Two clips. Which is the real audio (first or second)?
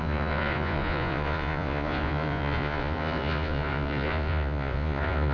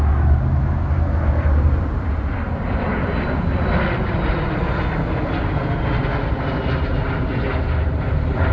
second